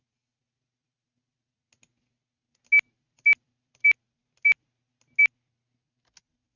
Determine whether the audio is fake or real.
real